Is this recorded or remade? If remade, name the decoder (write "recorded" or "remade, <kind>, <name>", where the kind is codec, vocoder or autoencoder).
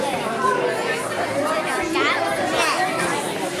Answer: recorded